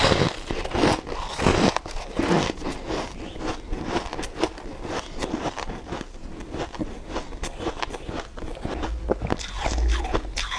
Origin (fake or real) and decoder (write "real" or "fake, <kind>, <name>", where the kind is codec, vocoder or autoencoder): real